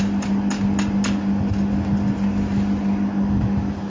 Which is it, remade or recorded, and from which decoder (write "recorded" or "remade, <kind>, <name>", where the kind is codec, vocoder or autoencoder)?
recorded